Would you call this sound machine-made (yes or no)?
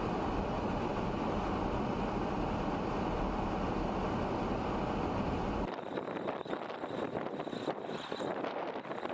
no